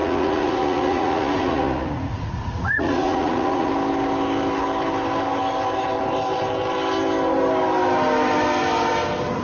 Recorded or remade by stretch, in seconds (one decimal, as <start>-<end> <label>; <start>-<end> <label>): 0.0-3.7 remade; 3.7-9.4 recorded